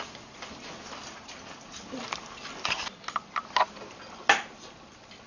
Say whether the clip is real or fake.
real